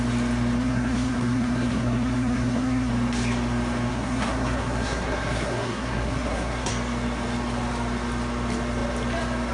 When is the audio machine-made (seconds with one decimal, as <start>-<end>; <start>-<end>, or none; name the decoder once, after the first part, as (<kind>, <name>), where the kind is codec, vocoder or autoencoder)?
0.6-2.9 (codec, SNAC); 3.9-6.7